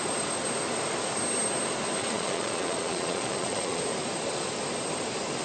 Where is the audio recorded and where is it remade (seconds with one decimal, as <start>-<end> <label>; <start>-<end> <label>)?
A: 0.0-2.0 recorded; 2.0-3.8 remade; 3.8-5.4 recorded